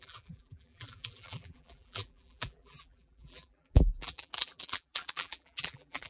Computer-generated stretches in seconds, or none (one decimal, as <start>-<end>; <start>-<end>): 0.0-6.1